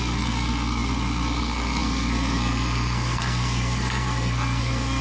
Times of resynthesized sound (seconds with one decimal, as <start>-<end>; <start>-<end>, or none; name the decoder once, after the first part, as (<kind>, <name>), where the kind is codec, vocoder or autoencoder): 0.0-5.0 (codec, SNAC)